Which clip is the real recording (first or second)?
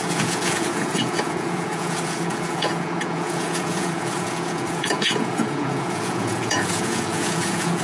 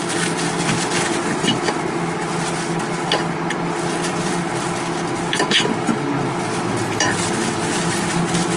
second